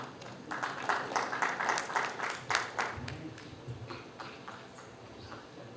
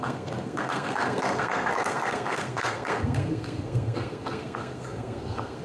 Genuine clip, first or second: first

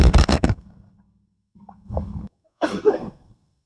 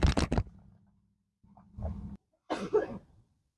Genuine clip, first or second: second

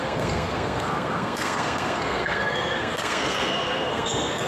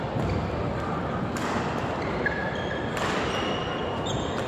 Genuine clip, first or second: second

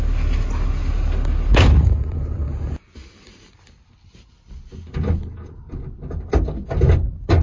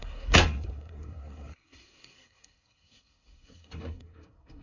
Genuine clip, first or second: first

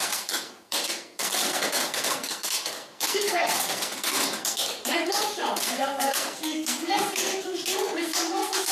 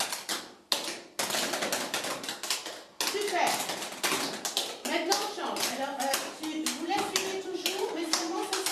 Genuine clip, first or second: second